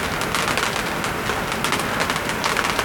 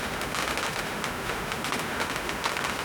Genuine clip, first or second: first